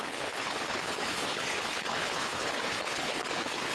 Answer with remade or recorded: remade